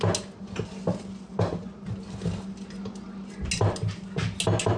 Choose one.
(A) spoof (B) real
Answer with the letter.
B